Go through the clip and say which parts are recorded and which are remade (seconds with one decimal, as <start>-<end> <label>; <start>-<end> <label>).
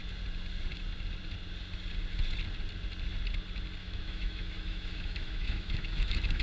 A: 0.0-3.8 recorded; 3.8-6.4 remade